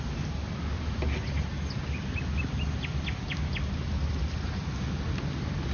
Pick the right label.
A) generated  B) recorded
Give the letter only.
B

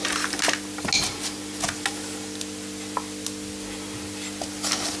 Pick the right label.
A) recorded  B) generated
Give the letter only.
A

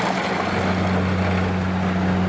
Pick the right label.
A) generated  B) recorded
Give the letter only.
B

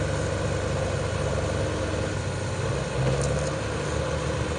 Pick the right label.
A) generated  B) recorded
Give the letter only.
B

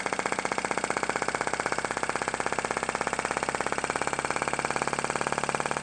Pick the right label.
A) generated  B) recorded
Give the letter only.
B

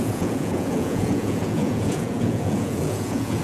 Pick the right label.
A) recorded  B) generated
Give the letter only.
B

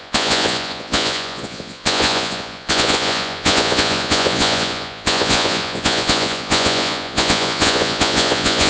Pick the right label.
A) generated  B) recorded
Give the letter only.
A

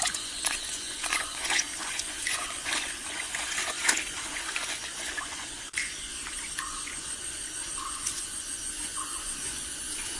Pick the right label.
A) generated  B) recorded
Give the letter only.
A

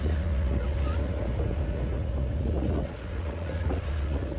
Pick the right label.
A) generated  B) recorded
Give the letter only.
A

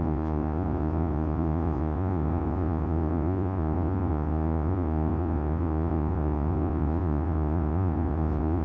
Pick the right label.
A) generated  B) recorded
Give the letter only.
A